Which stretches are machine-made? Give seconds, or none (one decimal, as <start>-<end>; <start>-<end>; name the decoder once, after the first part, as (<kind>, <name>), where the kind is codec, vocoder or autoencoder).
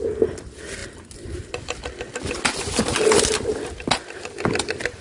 none